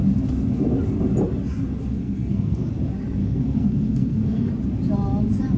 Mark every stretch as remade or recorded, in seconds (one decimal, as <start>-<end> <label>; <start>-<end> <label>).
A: 0.0-1.9 recorded; 1.9-2.7 remade; 2.7-3.2 recorded; 3.2-4.5 remade; 4.5-5.6 recorded